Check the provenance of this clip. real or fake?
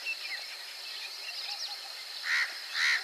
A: real